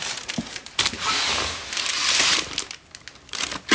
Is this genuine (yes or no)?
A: yes